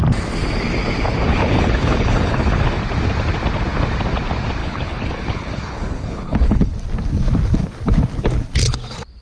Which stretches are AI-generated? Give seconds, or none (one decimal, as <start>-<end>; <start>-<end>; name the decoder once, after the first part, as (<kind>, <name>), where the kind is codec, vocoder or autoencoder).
1.3-2.6 (codec, HILCodec); 4.6-6.7